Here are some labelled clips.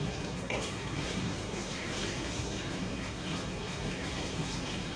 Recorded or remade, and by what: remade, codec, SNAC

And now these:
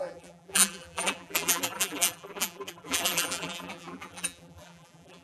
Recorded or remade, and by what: remade, vocoder, BigVGAN v2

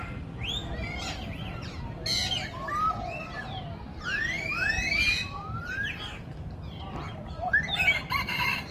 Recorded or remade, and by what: recorded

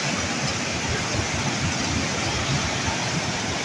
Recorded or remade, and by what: recorded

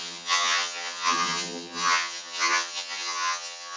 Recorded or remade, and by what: remade, vocoder, HiFi-GAN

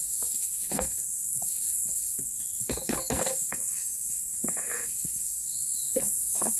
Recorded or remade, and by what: remade, codec, SNAC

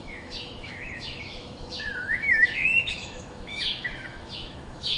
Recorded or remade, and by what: remade, autoencoder, DAC-VAE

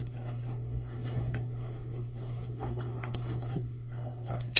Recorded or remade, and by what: remade, codec, SNAC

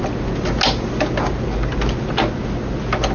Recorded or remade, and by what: recorded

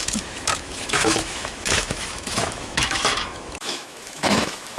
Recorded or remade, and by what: remade, autoencoder, DAC-VAE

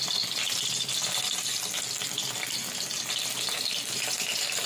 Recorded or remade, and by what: recorded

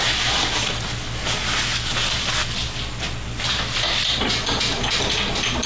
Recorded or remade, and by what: recorded